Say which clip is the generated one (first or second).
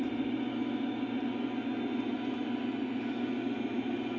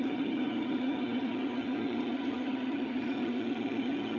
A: second